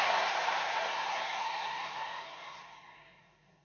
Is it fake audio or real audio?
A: fake